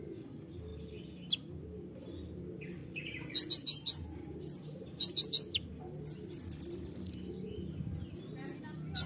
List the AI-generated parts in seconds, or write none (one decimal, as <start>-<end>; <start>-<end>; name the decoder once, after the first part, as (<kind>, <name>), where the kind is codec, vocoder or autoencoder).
none